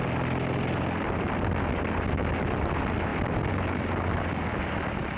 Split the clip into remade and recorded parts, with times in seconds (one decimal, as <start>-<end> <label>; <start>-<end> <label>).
0.0-5.2 recorded

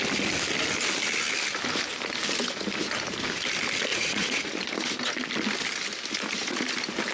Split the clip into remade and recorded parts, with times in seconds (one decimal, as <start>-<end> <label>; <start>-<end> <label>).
0.0-3.9 recorded; 3.9-4.5 remade; 4.5-7.1 recorded